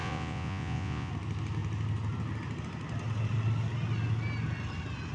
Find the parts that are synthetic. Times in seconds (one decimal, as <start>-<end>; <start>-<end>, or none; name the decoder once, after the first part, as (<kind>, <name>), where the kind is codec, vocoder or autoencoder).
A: 0.0-1.1 (vocoder, Vocos)